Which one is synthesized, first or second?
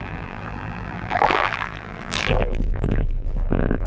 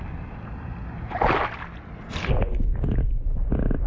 first